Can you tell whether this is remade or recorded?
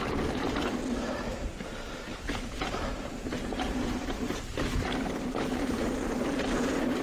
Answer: recorded